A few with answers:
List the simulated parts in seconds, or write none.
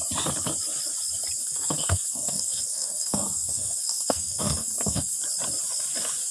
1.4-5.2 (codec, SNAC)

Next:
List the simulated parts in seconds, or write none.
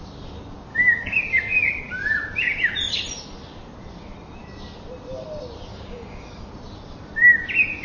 0.7-1.2 (codec, DAC); 5.7-6.5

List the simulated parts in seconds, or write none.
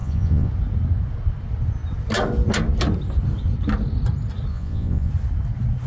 0.0-0.5 (vocoder, Vocos); 4.5-5.1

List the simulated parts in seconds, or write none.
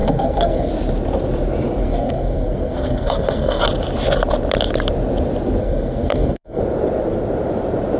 0.0-0.7 (codec, SNAC); 1.8-3.6; 5.6-6.6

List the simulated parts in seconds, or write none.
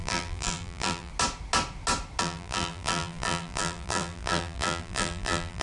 0.0-1.1 (vocoder, BigVGAN v2); 2.2-5.6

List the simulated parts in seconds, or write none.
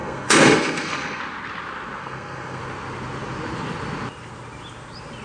0.0-1.2 (codec, SNAC); 2.0-2.6